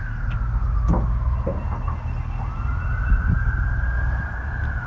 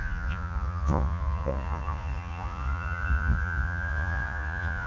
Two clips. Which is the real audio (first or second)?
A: first